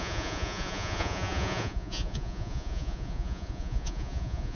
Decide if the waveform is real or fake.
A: fake